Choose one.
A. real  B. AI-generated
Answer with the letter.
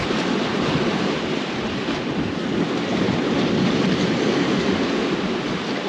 A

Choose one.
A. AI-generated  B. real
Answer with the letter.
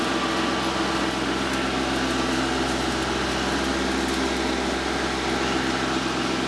B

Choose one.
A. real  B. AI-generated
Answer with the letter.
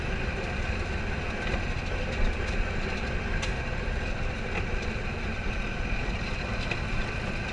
A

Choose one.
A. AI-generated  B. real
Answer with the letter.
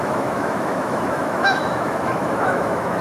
A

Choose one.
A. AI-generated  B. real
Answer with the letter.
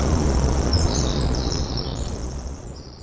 A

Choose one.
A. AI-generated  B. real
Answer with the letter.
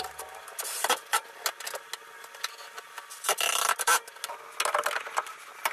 B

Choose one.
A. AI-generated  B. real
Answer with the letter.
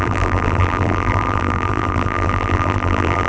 A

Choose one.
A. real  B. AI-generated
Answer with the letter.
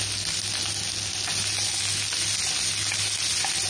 A